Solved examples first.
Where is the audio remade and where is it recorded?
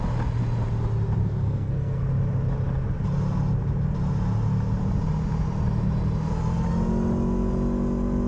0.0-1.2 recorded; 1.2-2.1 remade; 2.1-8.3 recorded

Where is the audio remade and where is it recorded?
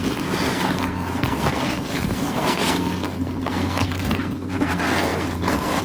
0.0-5.8 remade